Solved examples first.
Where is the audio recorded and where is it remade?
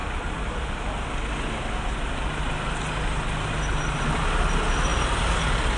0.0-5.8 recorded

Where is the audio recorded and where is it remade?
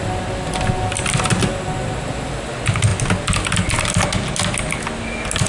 0.0-5.5 recorded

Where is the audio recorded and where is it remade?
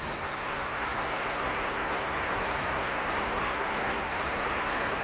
0.0-5.0 remade